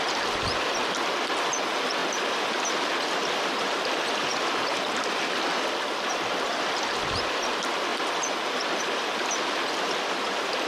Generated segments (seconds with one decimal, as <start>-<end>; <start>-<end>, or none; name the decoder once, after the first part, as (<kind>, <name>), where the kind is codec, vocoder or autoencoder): none

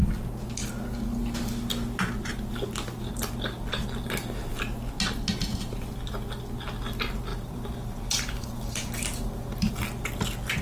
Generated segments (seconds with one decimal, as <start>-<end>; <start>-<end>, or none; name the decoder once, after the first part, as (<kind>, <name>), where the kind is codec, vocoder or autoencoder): 7.3-9.7 (vocoder, BigVGAN v2)

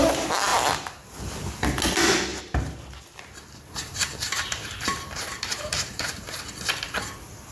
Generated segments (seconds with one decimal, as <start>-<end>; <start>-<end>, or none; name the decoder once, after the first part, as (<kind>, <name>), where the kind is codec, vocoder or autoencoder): 2.3-6.2 (vocoder, BigVGAN v2)

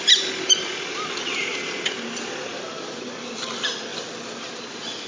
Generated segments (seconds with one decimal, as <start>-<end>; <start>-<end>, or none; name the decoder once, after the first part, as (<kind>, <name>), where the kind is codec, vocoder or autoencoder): none

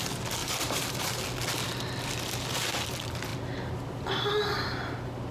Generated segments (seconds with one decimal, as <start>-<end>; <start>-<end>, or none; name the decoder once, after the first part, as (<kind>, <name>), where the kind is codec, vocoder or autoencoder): 0.4-1.2 (vocoder, BigVGAN v2)